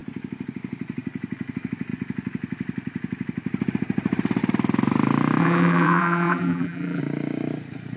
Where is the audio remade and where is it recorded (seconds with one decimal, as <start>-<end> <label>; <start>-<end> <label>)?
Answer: 0.0-5.4 recorded; 5.4-7.0 remade; 7.0-8.0 recorded